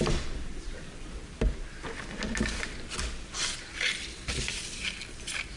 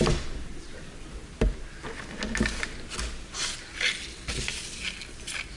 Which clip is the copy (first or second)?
first